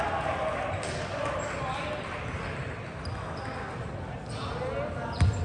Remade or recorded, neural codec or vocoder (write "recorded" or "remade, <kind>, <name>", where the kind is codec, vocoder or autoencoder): recorded